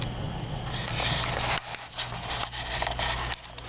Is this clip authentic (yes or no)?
yes